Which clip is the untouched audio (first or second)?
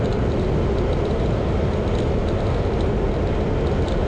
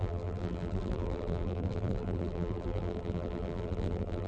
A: first